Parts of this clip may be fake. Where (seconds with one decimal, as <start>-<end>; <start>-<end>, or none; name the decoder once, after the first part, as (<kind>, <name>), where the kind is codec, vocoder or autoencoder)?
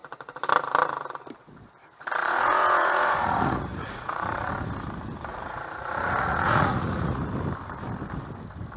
0.0-0.5 (vocoder, Vocos); 2.2-4.5; 5.3-7.2